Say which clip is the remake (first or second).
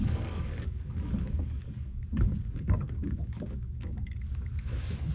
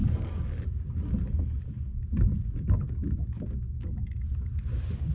first